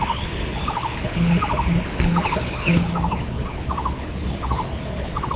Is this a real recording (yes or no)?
no